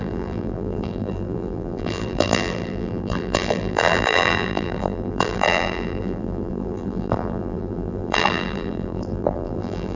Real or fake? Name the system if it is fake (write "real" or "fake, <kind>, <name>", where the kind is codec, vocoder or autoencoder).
fake, vocoder, BigVGAN v2